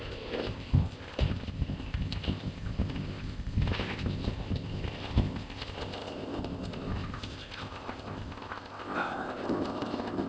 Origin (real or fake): fake